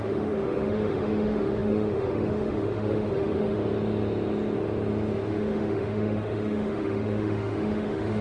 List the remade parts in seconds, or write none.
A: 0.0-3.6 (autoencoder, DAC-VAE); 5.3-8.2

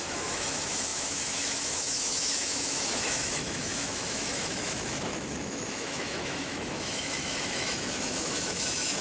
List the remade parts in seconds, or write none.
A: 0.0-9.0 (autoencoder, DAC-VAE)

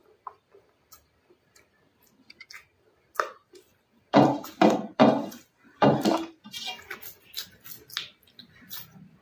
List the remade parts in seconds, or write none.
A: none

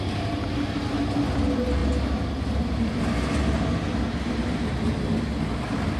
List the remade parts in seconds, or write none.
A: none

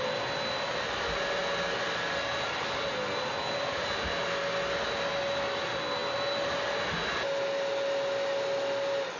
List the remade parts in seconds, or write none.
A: none